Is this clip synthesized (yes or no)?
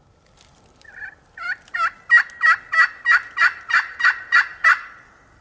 no